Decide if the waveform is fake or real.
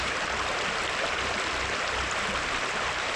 fake